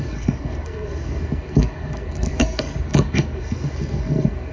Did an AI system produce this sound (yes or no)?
yes